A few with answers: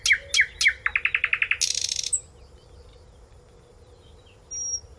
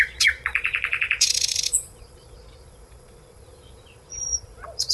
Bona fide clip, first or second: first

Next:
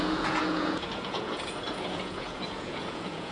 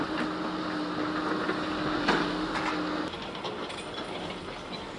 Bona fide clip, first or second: second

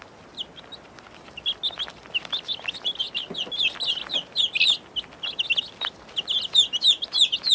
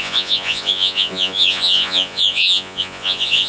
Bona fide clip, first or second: first